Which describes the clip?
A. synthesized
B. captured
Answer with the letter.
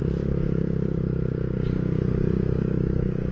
A